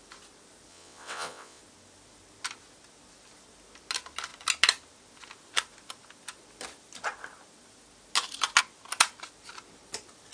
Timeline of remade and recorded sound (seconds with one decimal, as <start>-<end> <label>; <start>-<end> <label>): 0.0-0.7 recorded; 0.7-1.6 remade; 1.6-10.3 recorded